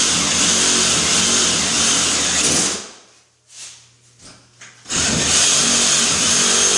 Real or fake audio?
real